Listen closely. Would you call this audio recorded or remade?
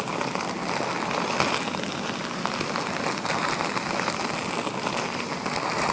recorded